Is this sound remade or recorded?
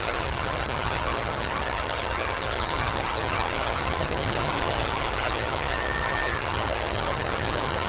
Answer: remade